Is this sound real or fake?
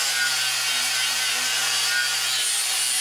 real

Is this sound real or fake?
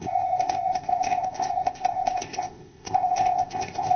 fake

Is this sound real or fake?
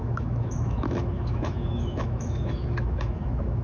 fake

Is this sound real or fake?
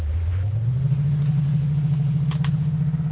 real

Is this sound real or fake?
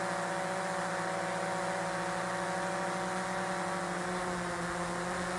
real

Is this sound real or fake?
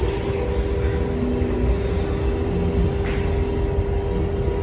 real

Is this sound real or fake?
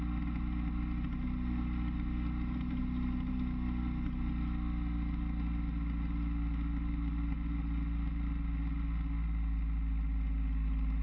real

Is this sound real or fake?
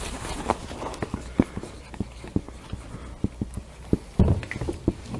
real